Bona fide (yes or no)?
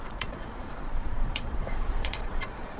no